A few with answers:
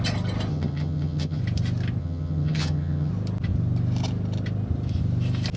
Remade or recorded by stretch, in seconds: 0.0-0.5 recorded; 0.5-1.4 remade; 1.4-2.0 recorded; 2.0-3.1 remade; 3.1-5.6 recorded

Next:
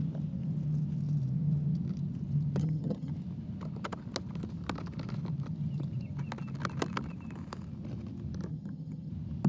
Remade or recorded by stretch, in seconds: 0.0-2.6 recorded; 2.6-3.1 remade; 3.1-8.5 recorded; 8.5-9.1 remade; 9.1-9.5 recorded

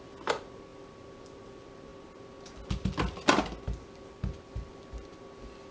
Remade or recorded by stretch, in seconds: 0.0-5.7 recorded

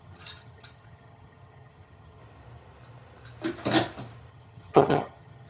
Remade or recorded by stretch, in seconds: 0.0-2.2 remade; 2.2-4.3 recorded; 4.3-5.5 remade